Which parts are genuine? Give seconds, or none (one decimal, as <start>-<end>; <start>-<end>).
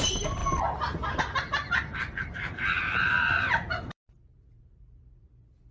0.0-2.2